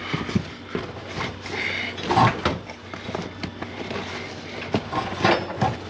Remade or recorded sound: recorded